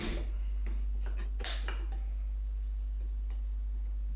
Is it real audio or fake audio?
real